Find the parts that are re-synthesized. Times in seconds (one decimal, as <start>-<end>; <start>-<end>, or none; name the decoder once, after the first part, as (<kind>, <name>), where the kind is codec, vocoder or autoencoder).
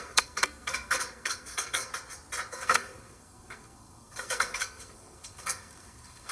0.0-1.9 (codec, SNAC); 2.5-6.3